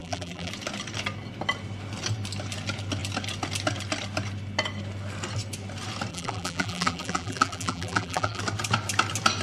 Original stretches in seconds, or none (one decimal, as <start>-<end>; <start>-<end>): 0.5-6.1; 8.4-9.4